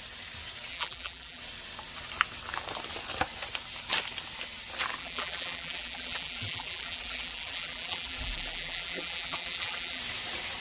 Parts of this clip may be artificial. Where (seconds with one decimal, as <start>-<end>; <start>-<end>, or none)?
0.7-1.4; 5.0-10.0